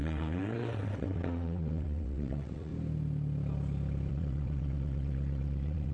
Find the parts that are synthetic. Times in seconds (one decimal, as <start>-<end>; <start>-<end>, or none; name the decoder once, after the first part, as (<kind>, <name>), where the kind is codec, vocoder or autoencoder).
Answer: 0.0-2.7 (vocoder, WaveNeXt); 4.1-5.9